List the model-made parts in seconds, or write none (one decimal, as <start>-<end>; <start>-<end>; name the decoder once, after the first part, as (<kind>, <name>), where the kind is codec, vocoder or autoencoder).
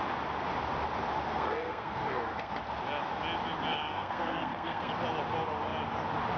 1.3-2.5 (codec, SNAC); 3.7-4.9